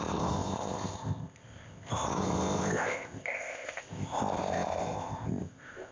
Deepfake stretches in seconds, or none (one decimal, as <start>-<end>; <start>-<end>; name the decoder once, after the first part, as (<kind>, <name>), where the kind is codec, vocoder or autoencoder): 0.0-5.9 (codec, ZipCodec)